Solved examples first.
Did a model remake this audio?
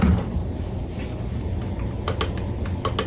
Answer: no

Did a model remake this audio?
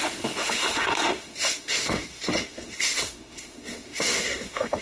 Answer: yes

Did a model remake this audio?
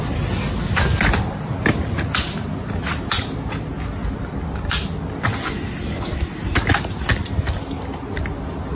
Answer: no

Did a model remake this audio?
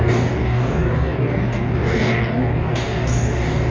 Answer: yes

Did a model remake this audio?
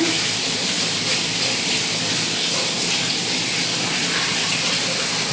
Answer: yes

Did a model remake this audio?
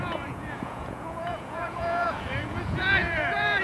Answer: yes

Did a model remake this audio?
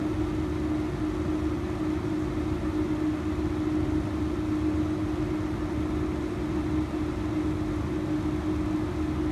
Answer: no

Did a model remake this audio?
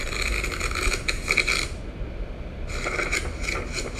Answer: no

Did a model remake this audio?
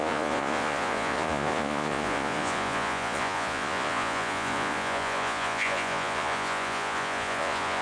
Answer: yes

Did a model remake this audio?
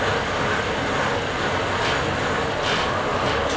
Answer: no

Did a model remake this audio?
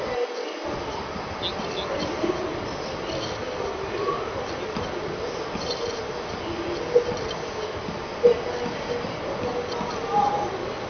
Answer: no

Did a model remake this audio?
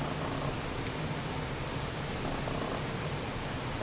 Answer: no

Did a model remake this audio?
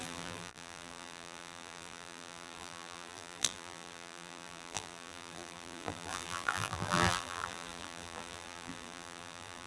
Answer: yes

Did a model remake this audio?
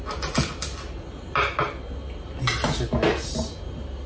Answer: no